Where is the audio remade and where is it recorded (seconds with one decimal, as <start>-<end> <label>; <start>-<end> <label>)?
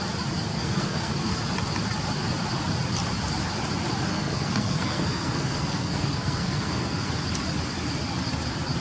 0.0-0.5 recorded; 0.5-1.4 remade; 1.4-4.1 recorded; 4.1-7.1 remade; 7.1-8.8 recorded